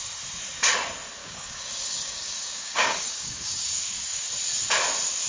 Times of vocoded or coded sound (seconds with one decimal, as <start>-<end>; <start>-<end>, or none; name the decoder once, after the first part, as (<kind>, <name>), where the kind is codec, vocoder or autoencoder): 1.2-4.2 (codec, DAC)